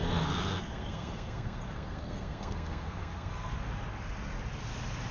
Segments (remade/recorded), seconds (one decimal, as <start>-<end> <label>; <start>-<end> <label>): 0.0-3.5 remade; 3.5-5.1 recorded